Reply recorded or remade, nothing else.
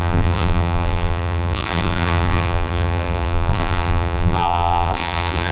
remade